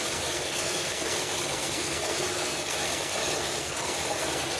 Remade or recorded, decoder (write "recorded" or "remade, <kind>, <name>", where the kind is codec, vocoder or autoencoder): remade, codec, SNAC